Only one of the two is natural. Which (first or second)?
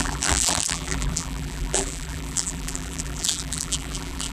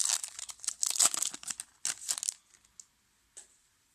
second